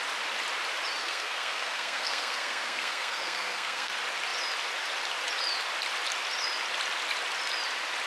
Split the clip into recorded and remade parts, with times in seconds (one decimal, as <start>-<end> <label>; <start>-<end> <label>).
0.0-1.0 recorded; 1.0-3.9 remade; 3.9-8.1 recorded